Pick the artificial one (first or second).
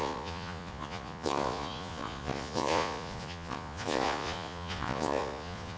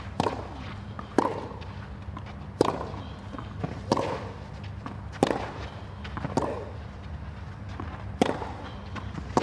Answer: first